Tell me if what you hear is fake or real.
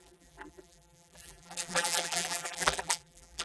fake